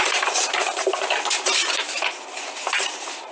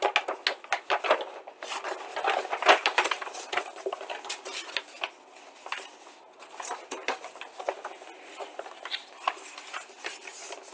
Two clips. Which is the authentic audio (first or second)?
second